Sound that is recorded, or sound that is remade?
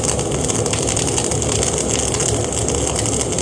recorded